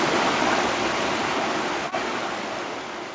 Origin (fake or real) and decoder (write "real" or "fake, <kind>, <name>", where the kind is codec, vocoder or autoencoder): real